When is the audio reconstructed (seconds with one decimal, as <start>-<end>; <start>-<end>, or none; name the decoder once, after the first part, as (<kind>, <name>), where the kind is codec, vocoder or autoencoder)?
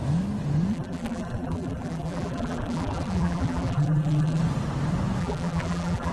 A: 0.7-4.4 (vocoder, BigVGAN v2); 5.2-6.1